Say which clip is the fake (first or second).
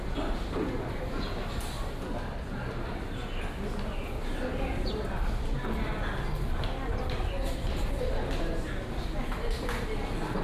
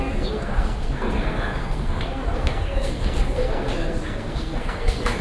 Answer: second